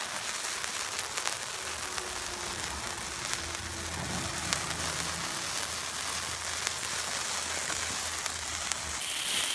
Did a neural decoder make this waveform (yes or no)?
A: no